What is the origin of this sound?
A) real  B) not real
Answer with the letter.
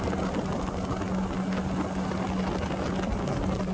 A